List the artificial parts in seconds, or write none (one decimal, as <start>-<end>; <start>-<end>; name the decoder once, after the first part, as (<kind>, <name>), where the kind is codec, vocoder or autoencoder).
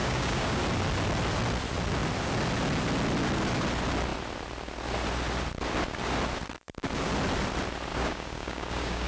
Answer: 0.0-0.6 (codec, DAC); 7.9-9.1